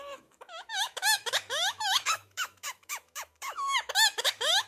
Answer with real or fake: fake